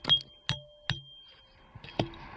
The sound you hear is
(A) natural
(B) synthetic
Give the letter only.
A